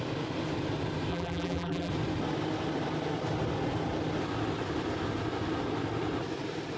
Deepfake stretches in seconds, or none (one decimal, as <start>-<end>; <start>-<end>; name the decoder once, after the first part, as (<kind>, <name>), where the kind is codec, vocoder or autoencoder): 1.1-1.9 (vocoder, BigVGAN v2)